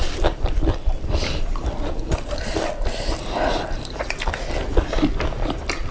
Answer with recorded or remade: remade